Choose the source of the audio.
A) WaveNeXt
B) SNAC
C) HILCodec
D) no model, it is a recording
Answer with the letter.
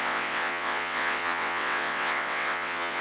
A